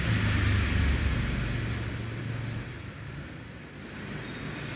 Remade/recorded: recorded